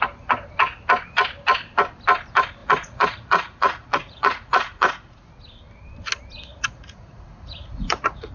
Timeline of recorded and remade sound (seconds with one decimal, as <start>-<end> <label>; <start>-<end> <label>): 0.0-2.6 recorded; 2.6-5.3 remade; 5.3-6.5 recorded; 6.5-8.3 remade